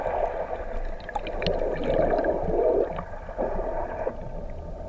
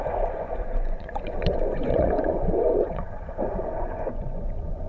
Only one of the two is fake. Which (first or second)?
second